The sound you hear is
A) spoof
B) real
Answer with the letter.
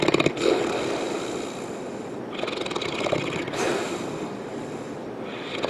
B